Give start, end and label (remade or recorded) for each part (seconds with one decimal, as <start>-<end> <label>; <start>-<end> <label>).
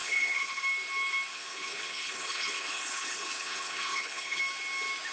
0.0-0.6 remade; 0.6-1.3 recorded; 1.3-4.4 remade; 4.4-5.1 recorded